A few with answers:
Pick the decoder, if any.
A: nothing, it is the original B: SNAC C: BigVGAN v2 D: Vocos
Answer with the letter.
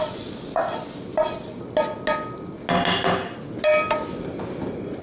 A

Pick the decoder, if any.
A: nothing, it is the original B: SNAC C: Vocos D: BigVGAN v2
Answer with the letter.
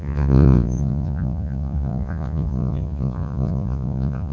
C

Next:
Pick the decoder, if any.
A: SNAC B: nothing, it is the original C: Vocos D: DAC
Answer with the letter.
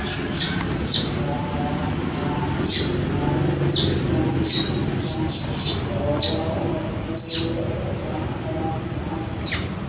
B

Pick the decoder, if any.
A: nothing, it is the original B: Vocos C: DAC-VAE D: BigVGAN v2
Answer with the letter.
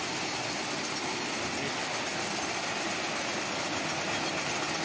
A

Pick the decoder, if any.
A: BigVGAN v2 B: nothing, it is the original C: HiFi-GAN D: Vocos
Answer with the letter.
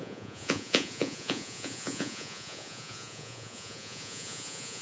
D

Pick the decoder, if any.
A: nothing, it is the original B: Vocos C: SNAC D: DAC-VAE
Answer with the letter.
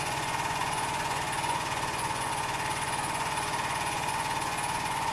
B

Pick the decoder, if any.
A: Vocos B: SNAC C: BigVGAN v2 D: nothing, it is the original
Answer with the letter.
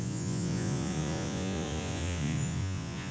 A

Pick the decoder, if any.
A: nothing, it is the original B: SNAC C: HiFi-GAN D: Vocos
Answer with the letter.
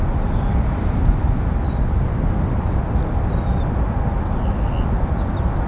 A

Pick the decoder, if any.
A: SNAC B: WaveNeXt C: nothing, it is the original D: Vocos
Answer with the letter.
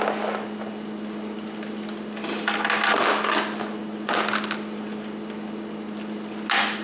C